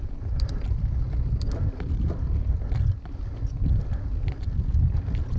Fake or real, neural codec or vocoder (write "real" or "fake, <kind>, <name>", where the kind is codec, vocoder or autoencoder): real